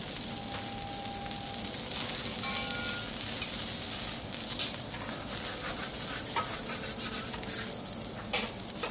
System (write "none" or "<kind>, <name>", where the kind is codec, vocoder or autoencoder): none